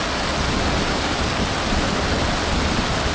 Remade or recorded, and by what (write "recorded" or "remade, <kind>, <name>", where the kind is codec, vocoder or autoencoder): recorded